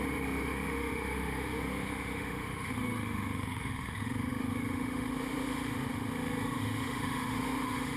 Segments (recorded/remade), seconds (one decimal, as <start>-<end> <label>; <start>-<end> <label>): 0.0-8.0 remade